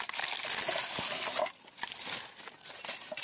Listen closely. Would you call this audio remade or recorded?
recorded